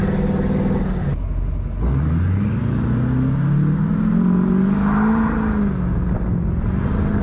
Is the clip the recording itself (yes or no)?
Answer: yes